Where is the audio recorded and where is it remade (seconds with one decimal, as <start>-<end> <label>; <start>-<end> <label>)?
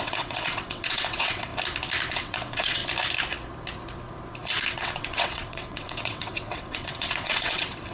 0.0-1.5 remade; 1.5-2.1 recorded; 2.1-2.8 remade; 2.8-4.7 recorded; 4.7-7.9 remade